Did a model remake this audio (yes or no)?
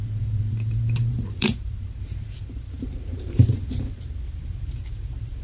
yes